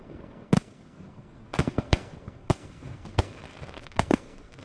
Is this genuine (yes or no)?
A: no